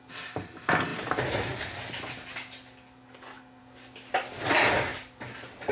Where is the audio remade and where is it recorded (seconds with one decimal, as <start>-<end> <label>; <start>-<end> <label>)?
0.0-5.7 recorded